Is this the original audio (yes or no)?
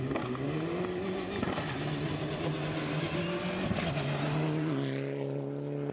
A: yes